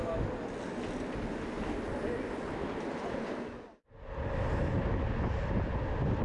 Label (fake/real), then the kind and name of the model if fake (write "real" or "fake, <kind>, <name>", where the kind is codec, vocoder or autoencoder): real